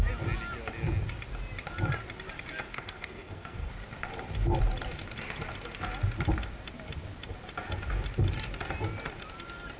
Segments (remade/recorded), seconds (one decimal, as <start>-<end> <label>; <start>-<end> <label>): 0.0-2.7 recorded; 2.7-3.7 remade; 3.7-9.8 recorded

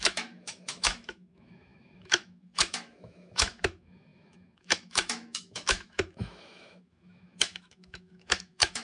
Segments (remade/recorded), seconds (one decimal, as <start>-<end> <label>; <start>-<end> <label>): 0.0-8.8 remade

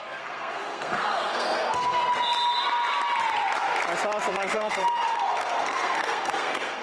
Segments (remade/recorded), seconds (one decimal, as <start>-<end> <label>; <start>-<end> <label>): 0.0-2.0 remade; 2.0-4.3 recorded; 4.3-6.8 remade

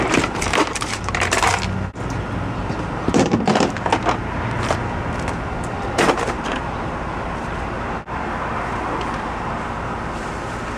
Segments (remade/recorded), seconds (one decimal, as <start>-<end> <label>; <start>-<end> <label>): 0.0-1.5 remade; 1.5-2.6 recorded; 2.6-3.5 remade; 3.5-5.7 recorded; 5.7-10.8 remade

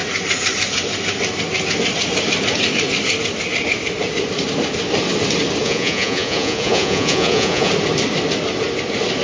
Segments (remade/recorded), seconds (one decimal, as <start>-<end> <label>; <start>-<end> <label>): 0.0-5.6 recorded; 5.6-7.7 remade; 7.7-9.2 recorded

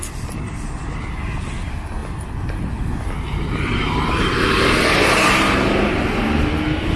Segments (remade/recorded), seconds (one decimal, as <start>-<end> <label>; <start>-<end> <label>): 0.0-7.0 recorded

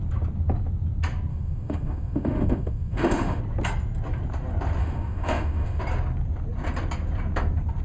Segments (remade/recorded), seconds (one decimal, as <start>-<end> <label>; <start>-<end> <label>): 0.0-1.3 recorded; 1.3-3.4 remade; 3.4-4.8 recorded; 4.8-5.8 remade; 5.8-7.8 recorded

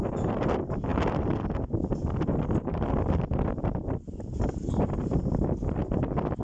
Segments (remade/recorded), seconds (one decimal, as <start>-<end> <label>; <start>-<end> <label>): 0.0-6.4 recorded